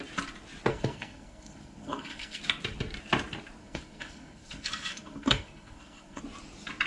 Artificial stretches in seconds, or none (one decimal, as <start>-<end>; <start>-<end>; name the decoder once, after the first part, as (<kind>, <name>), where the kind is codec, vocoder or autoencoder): 0.7-2.4 (codec, SNAC); 3.6-6.2